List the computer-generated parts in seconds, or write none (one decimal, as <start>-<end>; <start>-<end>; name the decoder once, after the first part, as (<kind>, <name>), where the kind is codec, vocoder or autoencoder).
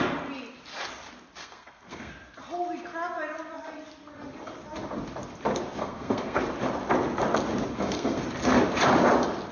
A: 1.4-2.1 (codec, SNAC); 5.8-6.4; 7.7-8.2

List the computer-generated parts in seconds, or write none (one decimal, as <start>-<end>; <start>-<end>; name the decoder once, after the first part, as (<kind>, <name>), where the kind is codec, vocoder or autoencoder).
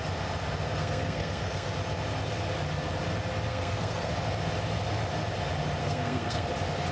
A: 0.8-1.7 (codec, SNAC); 3.5-4.1; 5.8-6.5